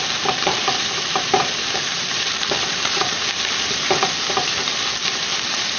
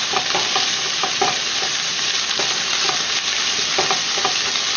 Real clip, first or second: second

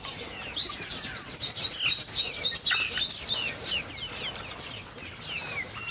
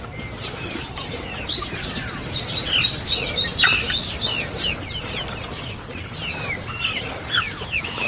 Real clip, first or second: first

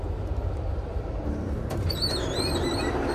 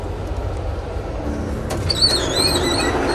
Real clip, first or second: second